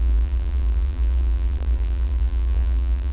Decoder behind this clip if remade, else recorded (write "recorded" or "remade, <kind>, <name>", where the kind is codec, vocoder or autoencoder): remade, vocoder, BigVGAN v2